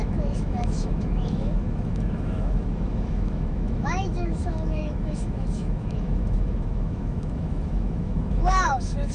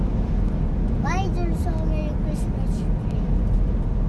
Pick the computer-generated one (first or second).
first